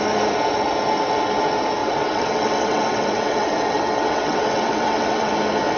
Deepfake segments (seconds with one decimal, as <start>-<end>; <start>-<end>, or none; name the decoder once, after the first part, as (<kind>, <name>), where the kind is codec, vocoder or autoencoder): 1.8-5.3 (vocoder, WaveNeXt)